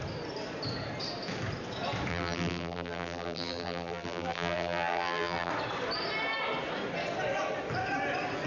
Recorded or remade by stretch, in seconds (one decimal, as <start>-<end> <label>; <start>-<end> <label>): 0.0-2.1 recorded; 2.1-5.5 remade; 5.5-8.5 recorded